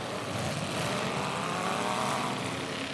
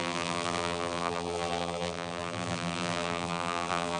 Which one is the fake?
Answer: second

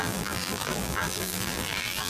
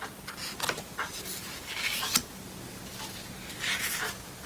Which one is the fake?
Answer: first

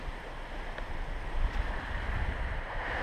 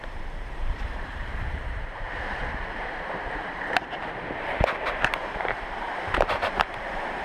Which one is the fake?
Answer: second